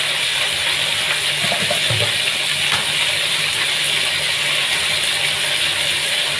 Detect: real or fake real